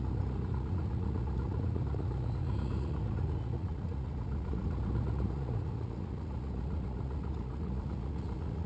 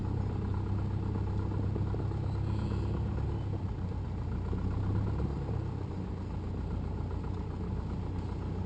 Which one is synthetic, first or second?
first